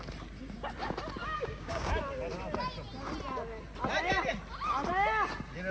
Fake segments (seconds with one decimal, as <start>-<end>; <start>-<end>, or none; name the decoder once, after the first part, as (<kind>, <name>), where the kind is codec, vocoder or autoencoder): 1.2-1.9 (codec, DAC)